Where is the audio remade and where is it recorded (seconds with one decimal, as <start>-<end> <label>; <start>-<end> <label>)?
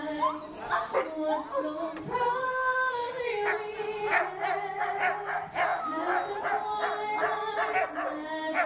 0.0-2.4 recorded; 2.4-3.2 remade; 3.2-8.7 recorded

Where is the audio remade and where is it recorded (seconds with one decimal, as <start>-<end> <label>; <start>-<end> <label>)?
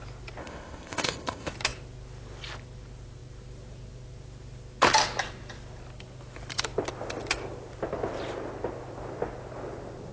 0.0-0.4 recorded; 0.4-1.5 remade; 1.5-10.1 recorded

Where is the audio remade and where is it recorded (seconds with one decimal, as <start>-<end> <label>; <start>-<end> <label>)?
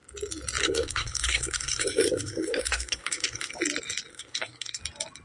0.0-0.6 recorded; 0.6-3.5 remade; 3.5-4.1 recorded; 4.1-4.8 remade; 4.8-5.2 recorded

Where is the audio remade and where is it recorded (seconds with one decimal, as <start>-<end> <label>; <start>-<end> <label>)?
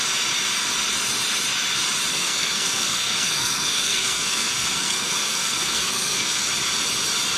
0.0-2.1 recorded; 2.1-6.5 remade; 6.5-7.4 recorded